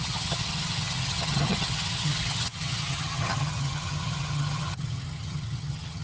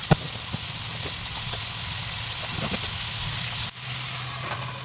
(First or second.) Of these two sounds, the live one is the second